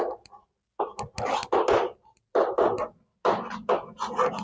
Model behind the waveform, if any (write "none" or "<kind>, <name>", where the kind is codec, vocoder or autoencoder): none